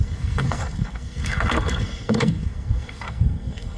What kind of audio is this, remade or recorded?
remade